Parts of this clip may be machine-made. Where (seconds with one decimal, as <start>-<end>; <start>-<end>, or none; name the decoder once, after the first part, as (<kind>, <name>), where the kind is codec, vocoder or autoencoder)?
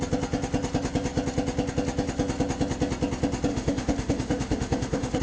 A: 3.5-5.2 (autoencoder, DAC-VAE)